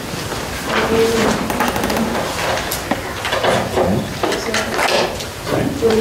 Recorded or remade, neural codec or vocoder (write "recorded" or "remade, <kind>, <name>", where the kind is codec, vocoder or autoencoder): recorded